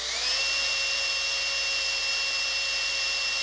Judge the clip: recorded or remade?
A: recorded